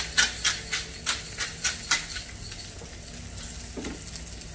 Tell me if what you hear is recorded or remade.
recorded